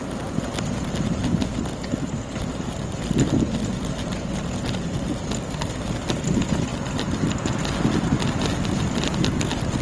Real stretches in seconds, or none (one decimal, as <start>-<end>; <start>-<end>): 0.0-9.8